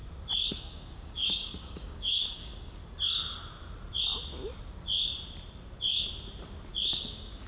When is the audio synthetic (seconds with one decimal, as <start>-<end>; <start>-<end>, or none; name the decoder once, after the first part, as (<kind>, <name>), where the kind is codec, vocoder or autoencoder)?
0.5-2.8 (codec, DAC); 6.9-7.5